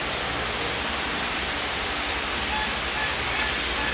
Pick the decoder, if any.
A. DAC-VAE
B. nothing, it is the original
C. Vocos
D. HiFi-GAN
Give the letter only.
B